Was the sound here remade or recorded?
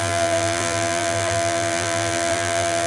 remade